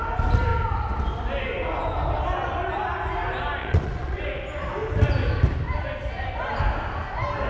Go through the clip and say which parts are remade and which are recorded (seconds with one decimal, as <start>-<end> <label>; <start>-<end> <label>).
0.0-3.6 recorded; 3.6-4.2 remade; 4.2-7.5 recorded